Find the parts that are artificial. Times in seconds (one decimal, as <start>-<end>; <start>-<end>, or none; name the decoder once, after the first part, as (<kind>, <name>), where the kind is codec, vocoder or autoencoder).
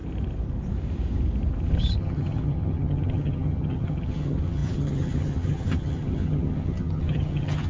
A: 2.0-7.7 (vocoder, HiFi-GAN)